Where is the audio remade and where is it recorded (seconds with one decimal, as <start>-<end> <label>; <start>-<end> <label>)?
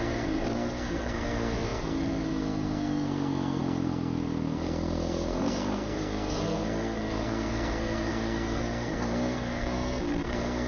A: 0.0-10.7 remade